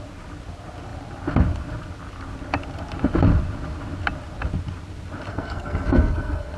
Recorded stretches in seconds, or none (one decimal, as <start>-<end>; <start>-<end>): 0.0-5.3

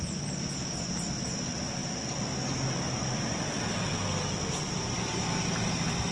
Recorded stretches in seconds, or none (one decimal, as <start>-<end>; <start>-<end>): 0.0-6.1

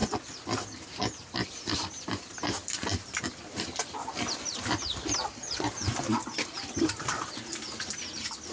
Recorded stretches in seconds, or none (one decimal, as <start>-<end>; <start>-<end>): none